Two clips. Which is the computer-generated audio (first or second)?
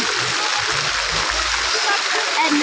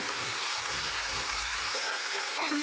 second